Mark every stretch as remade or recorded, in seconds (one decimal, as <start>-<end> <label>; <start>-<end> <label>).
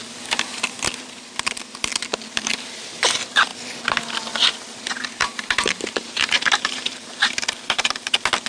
0.0-5.2 recorded; 5.2-8.1 remade; 8.1-8.5 recorded